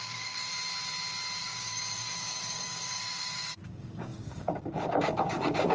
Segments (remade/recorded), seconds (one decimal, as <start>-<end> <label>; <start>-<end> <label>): 0.0-0.5 remade; 0.5-1.4 recorded; 1.4-5.7 remade